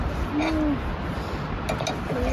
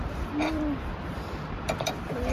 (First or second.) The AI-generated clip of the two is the second